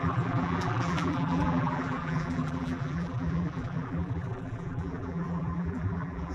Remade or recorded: remade